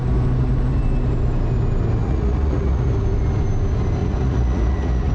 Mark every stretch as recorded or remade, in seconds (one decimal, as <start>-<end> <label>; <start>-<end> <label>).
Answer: 0.0-2.0 recorded; 2.0-2.9 remade; 2.9-4.0 recorded; 4.0-5.1 remade